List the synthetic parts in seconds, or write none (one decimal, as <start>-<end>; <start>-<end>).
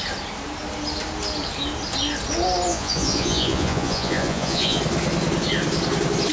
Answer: 2.7-4.8